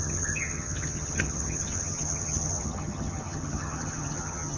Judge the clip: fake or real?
fake